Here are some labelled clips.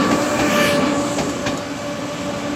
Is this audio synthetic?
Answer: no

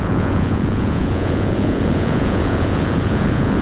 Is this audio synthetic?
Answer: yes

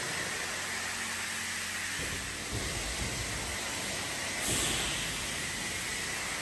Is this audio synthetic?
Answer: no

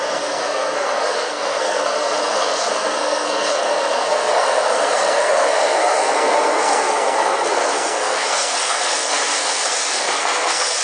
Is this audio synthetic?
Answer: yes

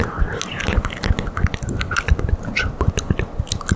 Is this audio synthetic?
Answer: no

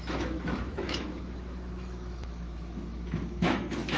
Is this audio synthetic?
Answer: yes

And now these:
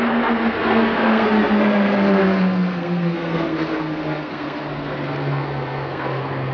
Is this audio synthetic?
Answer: yes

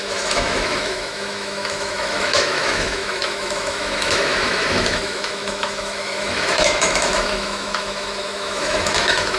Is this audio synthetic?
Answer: yes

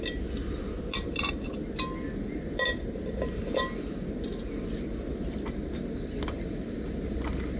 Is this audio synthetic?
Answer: no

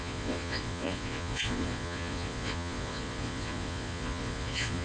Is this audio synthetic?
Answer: yes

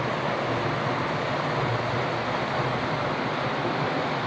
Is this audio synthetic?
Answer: no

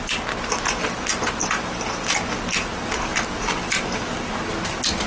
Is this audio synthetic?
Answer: no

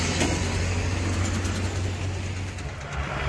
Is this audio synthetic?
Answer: no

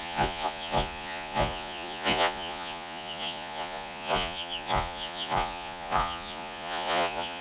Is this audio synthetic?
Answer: yes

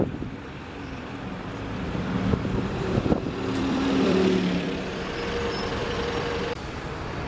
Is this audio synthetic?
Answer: yes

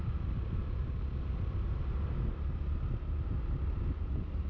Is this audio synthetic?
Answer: no